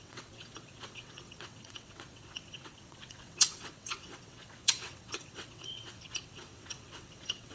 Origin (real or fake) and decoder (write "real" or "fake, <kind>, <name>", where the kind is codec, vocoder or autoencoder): fake, vocoder, WaveNeXt